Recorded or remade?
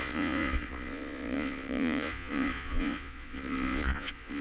remade